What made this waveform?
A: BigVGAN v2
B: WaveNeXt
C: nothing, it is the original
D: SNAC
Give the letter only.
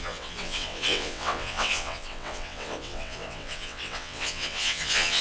B